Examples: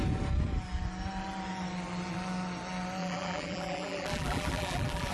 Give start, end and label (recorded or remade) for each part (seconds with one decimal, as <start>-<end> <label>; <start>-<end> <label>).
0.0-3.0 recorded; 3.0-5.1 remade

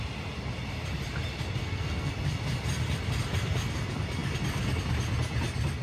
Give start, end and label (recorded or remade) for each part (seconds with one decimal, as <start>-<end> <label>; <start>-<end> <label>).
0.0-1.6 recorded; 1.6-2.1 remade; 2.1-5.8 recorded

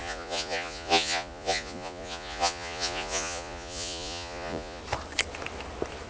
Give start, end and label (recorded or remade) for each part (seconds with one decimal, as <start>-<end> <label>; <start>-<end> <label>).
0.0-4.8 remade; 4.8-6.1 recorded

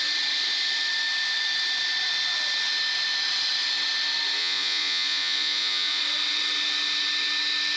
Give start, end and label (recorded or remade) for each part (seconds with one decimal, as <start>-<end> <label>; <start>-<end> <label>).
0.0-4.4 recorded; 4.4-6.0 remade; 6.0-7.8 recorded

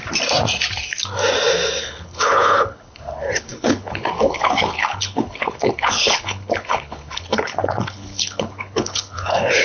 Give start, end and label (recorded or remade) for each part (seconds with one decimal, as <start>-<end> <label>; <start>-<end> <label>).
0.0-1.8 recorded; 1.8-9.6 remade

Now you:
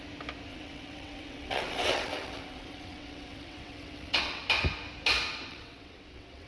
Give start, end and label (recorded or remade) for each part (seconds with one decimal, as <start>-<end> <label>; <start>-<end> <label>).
0.0-0.5 recorded; 0.5-4.4 remade; 4.4-5.5 recorded; 5.5-6.5 remade

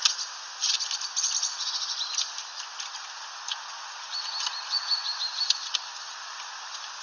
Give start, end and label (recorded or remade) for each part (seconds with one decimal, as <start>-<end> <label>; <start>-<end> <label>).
0.0-7.0 recorded